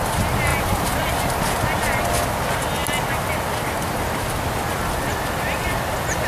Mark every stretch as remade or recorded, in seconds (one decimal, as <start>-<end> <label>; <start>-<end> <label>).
0.0-0.5 recorded; 0.5-1.4 remade; 1.4-6.3 recorded